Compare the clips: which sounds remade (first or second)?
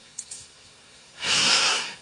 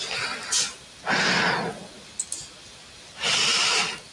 first